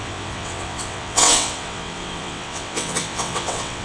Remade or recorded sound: remade